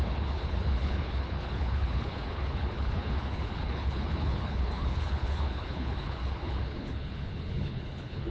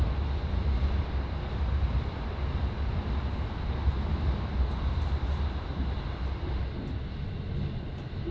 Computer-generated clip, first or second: first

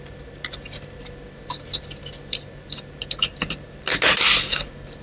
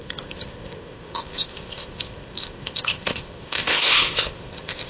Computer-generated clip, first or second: second